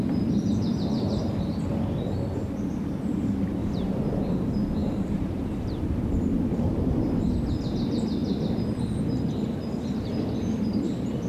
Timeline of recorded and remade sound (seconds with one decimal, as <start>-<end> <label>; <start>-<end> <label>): 0.0-3.6 recorded; 3.6-4.2 remade; 4.2-4.8 recorded; 4.8-6.2 remade; 6.2-11.3 recorded